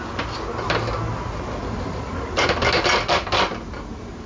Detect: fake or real real